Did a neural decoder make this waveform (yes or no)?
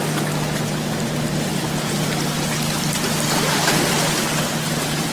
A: no